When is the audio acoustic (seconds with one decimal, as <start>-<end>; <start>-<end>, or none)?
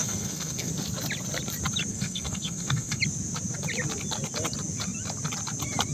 0.7-1.9; 3.0-5.9